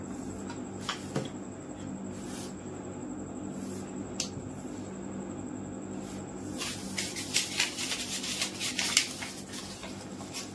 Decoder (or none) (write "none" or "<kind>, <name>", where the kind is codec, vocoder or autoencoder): none